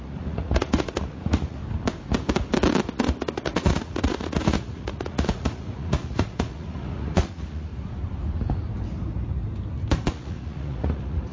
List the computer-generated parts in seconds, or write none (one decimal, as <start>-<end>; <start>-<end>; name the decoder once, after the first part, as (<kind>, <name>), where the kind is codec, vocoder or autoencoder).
0.0-1.6 (vocoder, Vocos); 2.9-7.7; 10.1-11.3